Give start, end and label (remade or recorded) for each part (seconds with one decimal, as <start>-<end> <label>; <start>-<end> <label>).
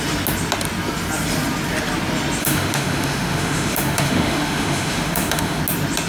0.0-2.4 recorded; 2.4-5.6 remade; 5.6-6.1 recorded